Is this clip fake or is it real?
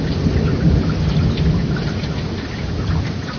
real